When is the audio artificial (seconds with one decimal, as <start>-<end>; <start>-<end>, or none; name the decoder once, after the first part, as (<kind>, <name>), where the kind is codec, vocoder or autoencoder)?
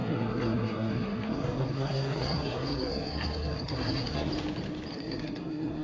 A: 0.0-4.3 (codec, SNAC); 4.9-5.8